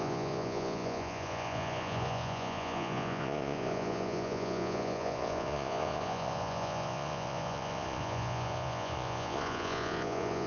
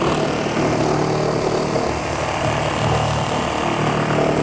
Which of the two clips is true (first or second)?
second